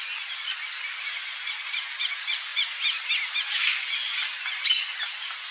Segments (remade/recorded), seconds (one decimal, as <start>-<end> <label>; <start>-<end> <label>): 0.0-5.5 recorded